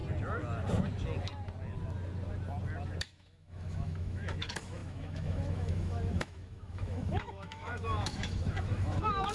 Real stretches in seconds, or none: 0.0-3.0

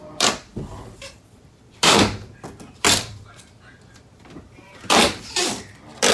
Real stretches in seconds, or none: none

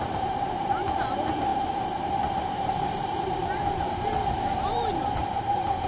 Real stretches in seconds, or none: none